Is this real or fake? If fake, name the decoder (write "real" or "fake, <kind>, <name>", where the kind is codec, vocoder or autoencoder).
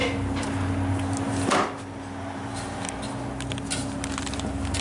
real